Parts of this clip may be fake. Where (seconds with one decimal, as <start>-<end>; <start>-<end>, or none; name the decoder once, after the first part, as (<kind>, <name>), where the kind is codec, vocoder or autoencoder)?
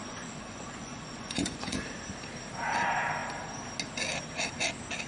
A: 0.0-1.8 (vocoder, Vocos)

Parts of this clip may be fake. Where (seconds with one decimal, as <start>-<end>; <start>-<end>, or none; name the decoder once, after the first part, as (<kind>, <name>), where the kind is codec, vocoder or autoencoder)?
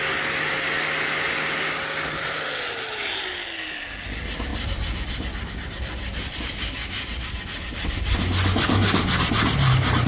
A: none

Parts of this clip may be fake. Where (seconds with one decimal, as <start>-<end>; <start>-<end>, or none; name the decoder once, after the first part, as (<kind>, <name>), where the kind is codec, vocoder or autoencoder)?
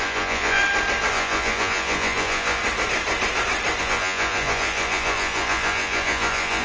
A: 0.0-0.6 (vocoder, Vocos); 1.1-2.6; 3.8-6.6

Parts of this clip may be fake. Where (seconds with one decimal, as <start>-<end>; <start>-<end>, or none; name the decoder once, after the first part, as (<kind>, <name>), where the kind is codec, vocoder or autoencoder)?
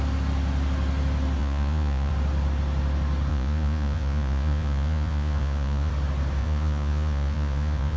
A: 1.4-2.1 (vocoder, Vocos); 3.3-5.9; 6.4-8.0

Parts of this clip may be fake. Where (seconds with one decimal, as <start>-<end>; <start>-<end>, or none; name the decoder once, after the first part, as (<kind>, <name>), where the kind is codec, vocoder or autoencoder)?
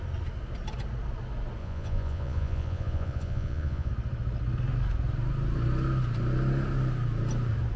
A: 1.6-3.9 (vocoder, Vocos)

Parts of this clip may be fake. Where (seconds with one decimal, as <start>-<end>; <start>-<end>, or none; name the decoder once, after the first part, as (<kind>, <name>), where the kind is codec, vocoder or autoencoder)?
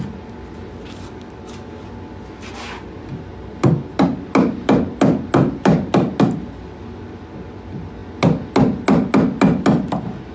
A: none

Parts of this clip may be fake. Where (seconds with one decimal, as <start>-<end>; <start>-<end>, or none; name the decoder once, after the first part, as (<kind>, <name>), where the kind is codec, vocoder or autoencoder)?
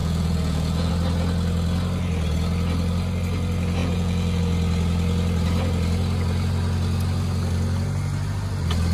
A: 0.0-0.9 (vocoder, Vocos); 3.8-4.4